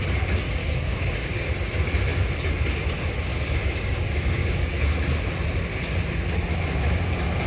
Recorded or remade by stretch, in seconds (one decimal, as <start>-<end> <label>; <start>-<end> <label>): 0.0-0.6 recorded; 0.6-1.4 remade; 1.4-3.3 recorded; 3.3-4.8 remade; 4.8-7.5 recorded